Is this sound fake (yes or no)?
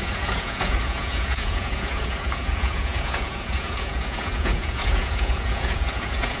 yes